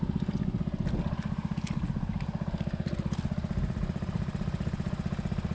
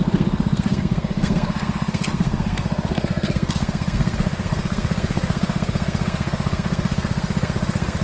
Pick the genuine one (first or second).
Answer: first